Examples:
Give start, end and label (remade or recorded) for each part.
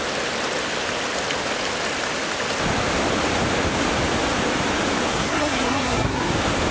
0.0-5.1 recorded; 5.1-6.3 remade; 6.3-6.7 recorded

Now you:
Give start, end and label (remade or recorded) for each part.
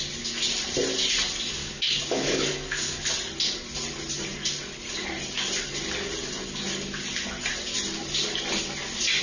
0.0-1.6 recorded; 1.6-3.0 remade; 3.0-9.2 recorded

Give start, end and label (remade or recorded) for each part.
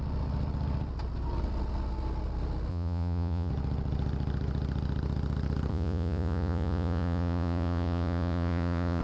0.0-2.7 recorded; 2.7-3.5 remade; 3.5-5.7 recorded; 5.7-9.0 remade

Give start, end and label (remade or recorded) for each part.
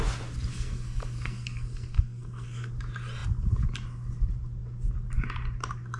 0.0-0.5 recorded; 0.5-2.7 remade; 2.7-6.0 recorded